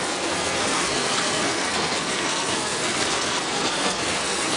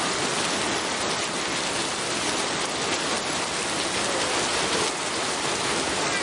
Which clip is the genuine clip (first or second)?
second